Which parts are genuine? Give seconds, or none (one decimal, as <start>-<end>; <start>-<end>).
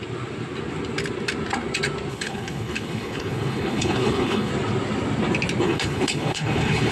0.0-2.1; 4.5-5.6